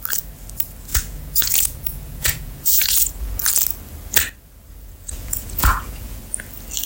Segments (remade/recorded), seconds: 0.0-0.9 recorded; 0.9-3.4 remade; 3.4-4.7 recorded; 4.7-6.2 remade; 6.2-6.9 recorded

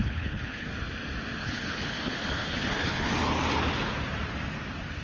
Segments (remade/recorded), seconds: 0.0-0.7 remade; 0.7-1.4 recorded; 1.4-3.1 remade; 3.1-5.0 recorded

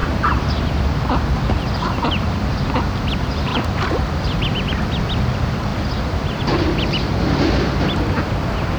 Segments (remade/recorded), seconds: 0.0-0.7 remade; 0.7-3.5 recorded; 3.5-4.2 remade; 4.2-8.8 recorded

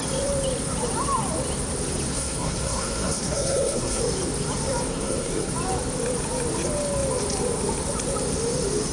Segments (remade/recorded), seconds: 0.0-2.1 recorded; 2.1-4.0 remade; 4.0-4.9 recorded; 4.9-5.5 remade; 5.5-8.9 recorded

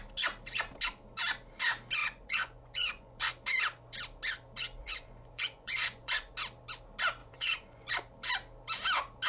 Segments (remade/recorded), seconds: 0.0-2.0 recorded; 2.0-3.3 remade; 3.3-4.8 recorded; 4.8-6.3 remade; 6.3-7.2 recorded; 7.2-7.9 remade; 7.9-9.3 recorded

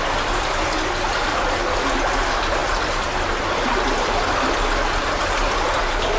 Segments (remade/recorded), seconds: 0.0-6.2 recorded

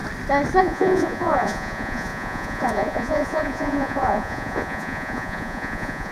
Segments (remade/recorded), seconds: 0.0-0.6 recorded; 0.6-6.1 remade